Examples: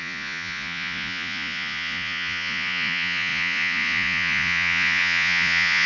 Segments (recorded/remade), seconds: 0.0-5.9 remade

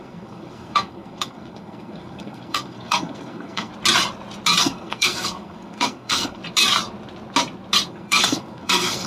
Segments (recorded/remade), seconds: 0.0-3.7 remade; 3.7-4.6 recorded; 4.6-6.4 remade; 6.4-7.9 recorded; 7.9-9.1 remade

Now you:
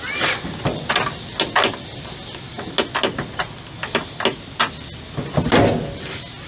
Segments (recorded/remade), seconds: 0.0-6.5 recorded

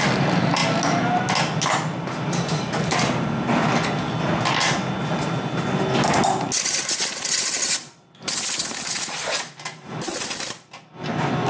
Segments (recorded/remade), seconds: 0.0-11.5 recorded